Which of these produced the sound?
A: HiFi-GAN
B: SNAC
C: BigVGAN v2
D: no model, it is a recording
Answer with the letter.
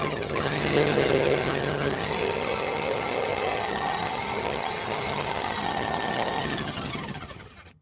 A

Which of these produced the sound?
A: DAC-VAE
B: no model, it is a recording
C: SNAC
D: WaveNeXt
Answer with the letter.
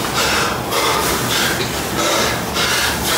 B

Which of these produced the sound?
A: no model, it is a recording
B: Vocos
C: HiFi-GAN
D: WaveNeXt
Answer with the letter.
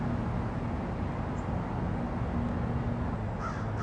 A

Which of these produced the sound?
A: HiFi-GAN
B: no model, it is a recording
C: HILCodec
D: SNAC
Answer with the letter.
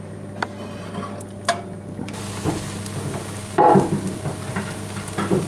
B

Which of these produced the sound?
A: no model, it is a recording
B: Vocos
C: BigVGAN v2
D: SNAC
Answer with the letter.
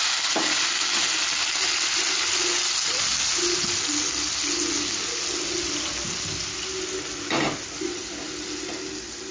A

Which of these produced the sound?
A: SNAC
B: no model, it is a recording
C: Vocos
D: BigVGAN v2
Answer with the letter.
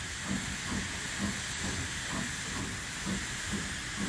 B